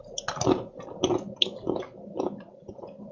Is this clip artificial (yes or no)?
no